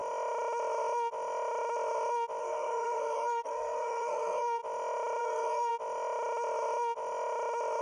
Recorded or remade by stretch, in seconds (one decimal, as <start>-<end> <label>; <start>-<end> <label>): 0.0-2.4 recorded; 2.4-4.6 remade; 4.6-5.2 recorded; 5.2-5.7 remade; 5.7-7.8 recorded